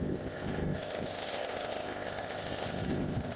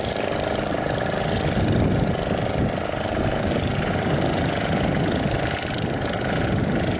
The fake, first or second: first